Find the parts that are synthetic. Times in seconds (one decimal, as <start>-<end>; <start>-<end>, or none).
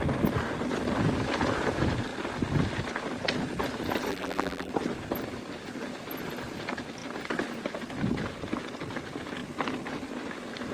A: 4.1-4.7